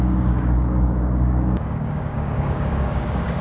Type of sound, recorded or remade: remade